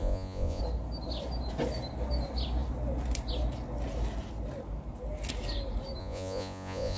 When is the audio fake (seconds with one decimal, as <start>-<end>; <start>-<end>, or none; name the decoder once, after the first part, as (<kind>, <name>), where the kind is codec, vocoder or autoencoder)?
0.0-0.6 (vocoder, Vocos); 6.0-7.0